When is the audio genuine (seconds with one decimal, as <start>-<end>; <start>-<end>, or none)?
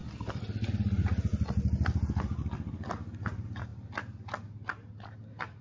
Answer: 0.0-5.6